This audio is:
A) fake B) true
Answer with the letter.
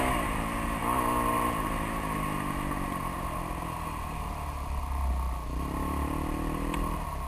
B